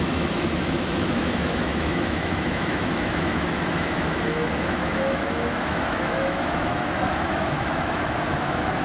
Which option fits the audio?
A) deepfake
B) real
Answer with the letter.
A